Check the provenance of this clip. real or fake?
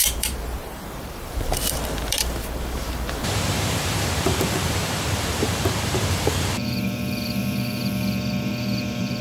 fake